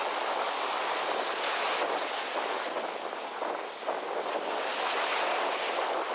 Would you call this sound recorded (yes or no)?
yes